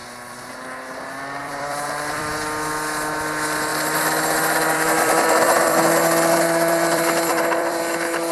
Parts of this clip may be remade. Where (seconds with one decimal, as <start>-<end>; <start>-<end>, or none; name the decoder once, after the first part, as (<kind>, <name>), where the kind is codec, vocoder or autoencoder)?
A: 1.4-2.3 (vocoder, BigVGAN v2); 3.7-7.8

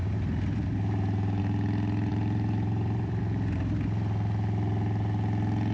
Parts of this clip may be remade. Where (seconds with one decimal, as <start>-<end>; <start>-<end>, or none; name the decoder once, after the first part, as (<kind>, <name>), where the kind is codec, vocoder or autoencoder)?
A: 0.0-1.4 (vocoder, BigVGAN v2); 2.1-3.2

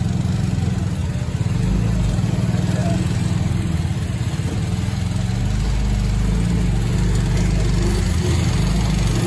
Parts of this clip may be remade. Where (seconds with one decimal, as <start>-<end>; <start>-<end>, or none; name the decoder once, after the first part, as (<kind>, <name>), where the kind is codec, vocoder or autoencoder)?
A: none

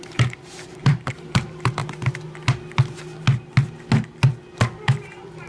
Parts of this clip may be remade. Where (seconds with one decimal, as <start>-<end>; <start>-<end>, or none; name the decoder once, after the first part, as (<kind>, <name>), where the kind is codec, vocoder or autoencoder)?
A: 0.0-1.8 (vocoder, BigVGAN v2); 5.1-5.5

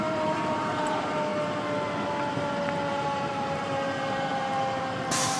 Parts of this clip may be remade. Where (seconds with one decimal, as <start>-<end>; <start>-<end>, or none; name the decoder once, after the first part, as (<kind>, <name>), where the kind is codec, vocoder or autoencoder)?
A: 0.0-1.3 (vocoder, BigVGAN v2); 2.9-5.4

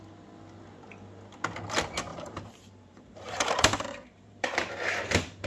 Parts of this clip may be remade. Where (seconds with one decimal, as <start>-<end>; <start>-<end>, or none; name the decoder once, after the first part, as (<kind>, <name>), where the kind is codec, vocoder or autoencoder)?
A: 2.1-5.5 (vocoder, BigVGAN v2)

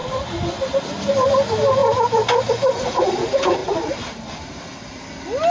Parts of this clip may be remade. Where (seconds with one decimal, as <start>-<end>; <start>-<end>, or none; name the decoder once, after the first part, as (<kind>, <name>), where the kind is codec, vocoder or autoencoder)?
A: none